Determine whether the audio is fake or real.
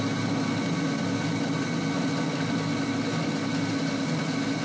real